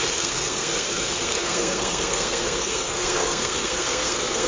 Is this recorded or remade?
remade